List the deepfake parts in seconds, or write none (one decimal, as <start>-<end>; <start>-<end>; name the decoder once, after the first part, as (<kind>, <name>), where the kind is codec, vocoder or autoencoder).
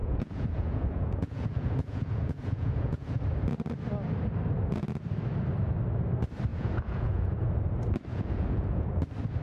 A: 0.0-3.2 (vocoder, Vocos); 6.5-7.5; 8.1-9.0